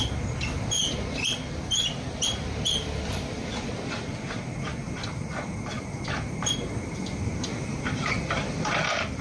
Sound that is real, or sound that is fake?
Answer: fake